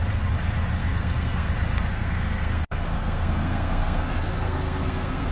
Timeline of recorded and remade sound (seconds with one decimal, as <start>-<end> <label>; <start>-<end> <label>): 0.0-0.8 recorded; 0.8-1.5 remade; 1.5-1.9 recorded; 1.9-5.3 remade